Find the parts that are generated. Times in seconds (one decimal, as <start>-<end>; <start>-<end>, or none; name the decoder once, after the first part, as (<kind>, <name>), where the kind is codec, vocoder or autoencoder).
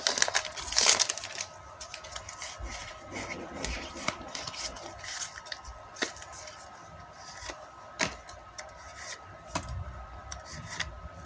none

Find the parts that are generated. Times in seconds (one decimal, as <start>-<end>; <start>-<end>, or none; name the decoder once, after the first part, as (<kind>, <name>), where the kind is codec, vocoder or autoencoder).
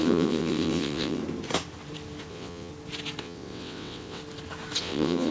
0.0-1.2 (vocoder, WaveNeXt); 2.3-2.7; 3.2-4.2; 4.8-5.3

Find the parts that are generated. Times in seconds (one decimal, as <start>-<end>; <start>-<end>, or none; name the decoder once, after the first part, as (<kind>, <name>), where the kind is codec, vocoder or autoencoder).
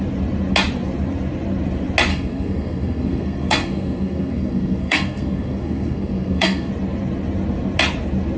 2.1-6.7 (codec, SNAC)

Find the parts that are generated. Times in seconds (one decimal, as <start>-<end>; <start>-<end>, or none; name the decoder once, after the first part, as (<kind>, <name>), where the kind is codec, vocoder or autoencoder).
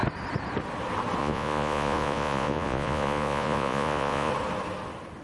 1.2-4.3 (vocoder, Vocos)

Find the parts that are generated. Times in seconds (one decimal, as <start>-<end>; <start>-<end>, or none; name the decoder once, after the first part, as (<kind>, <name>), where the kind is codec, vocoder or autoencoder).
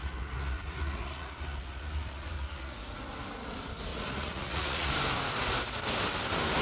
0.0-2.8 (vocoder, Vocos); 3.9-4.9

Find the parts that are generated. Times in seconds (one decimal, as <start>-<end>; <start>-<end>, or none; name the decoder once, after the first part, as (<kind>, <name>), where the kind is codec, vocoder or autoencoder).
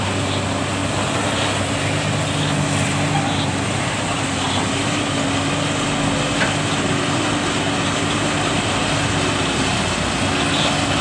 none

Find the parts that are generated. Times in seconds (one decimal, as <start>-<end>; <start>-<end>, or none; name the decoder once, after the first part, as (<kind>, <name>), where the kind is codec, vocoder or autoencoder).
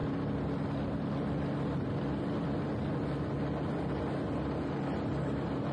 none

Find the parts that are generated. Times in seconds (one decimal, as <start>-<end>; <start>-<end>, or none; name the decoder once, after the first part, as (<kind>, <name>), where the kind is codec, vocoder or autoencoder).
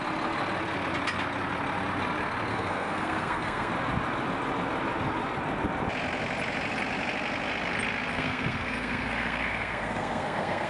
2.5-3.7 (codec, SNAC); 8.1-10.7